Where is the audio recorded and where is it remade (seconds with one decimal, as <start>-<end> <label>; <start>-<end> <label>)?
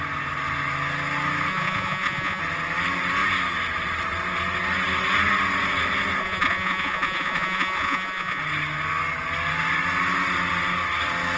0.0-1.5 recorded; 1.5-2.4 remade; 2.4-6.2 recorded; 6.2-8.4 remade; 8.4-11.4 recorded